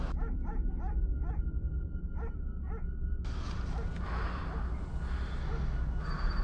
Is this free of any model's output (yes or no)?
yes